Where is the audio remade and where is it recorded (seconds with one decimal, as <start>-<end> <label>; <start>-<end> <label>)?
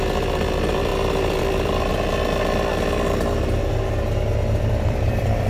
0.0-0.9 remade; 0.9-1.4 recorded; 1.4-1.9 remade; 1.9-4.6 recorded; 4.6-5.5 remade